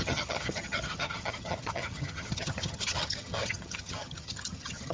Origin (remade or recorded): remade